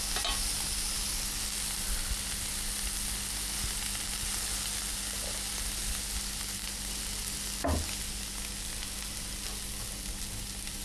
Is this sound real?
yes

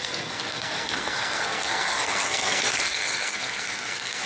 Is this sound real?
no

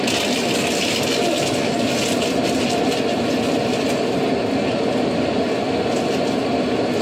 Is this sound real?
yes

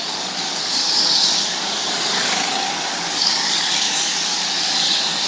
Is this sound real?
no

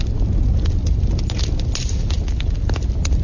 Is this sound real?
yes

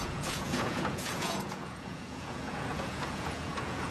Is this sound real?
no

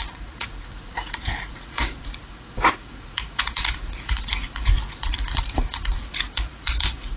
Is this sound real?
no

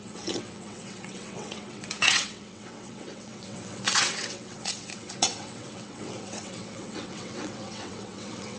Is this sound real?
no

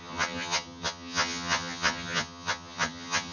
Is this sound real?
no